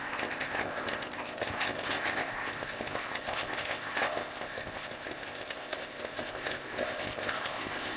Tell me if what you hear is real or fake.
fake